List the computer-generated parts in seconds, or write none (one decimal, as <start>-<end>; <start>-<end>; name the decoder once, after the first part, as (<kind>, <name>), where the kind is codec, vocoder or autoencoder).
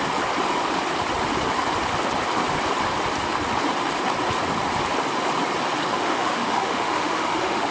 5.9-7.7 (autoencoder, DAC-VAE)